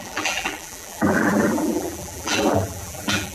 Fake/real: fake